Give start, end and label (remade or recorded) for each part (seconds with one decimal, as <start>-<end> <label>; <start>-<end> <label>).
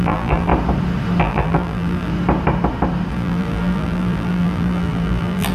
0.0-0.5 remade; 0.5-1.2 recorded; 1.2-2.1 remade; 2.1-3.1 recorded; 3.1-5.5 remade